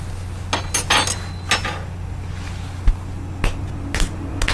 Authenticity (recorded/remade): recorded